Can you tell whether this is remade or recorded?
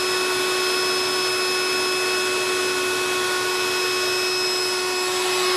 recorded